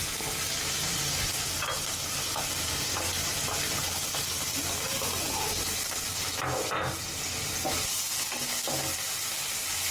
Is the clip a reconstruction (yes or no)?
no